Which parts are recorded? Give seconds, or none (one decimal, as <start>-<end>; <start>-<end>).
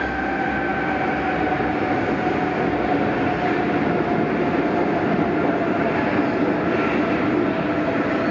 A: 0.0-8.3